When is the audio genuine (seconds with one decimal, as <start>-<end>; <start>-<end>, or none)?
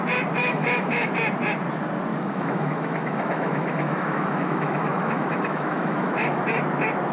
0.0-0.4; 1.1-2.1; 6.4-7.1